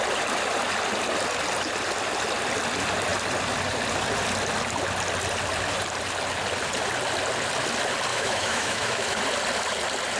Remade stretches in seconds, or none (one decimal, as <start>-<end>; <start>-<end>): 8.1-9.2